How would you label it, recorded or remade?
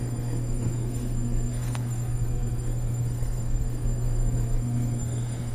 remade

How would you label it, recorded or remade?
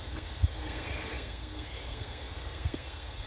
remade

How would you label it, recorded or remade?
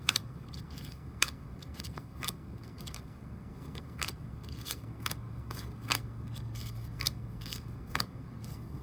remade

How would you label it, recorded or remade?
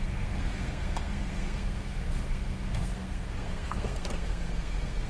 remade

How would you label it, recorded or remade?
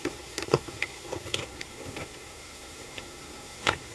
remade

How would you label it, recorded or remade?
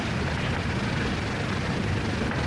recorded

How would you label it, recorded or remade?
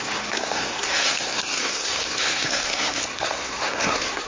remade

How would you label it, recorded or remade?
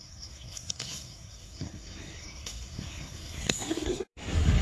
remade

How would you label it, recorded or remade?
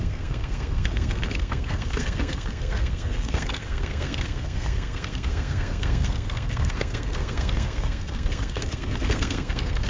remade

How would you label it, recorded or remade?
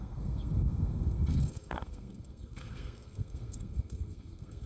remade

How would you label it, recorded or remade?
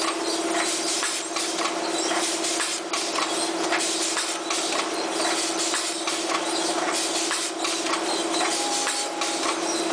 recorded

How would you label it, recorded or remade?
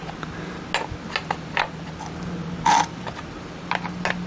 recorded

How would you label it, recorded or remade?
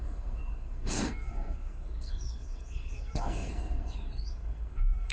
remade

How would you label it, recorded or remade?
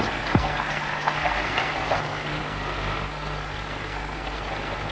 remade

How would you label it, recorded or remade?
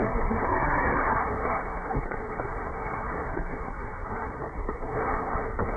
remade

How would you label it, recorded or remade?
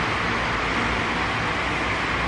recorded